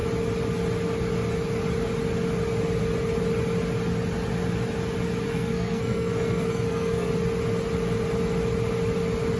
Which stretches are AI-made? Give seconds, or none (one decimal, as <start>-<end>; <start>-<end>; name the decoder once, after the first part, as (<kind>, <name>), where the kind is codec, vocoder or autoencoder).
5.3-7.1 (codec, SNAC)